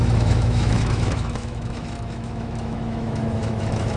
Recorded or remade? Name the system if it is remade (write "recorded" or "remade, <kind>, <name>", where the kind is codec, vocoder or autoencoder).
remade, autoencoder, DAC-VAE